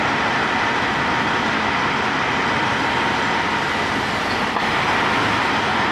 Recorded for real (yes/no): yes